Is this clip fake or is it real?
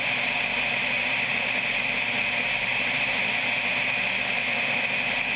real